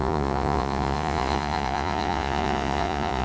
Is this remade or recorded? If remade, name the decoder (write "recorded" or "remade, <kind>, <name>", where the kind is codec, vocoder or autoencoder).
remade, vocoder, Vocos